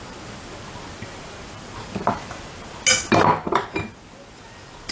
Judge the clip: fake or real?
real